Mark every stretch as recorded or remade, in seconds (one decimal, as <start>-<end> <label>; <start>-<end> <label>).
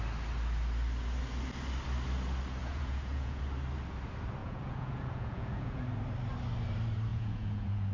0.0-2.6 recorded; 2.6-3.4 remade; 3.4-4.4 recorded; 4.4-5.8 remade; 5.8-7.1 recorded; 7.1-7.9 remade